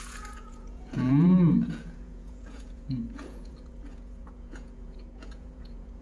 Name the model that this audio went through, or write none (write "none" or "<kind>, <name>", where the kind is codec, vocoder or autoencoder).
vocoder, Vocos